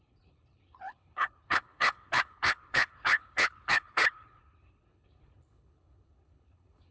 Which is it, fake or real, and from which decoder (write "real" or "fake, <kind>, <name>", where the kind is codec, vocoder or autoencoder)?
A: fake, codec, HILCodec